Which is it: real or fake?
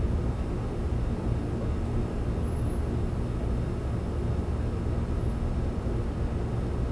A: real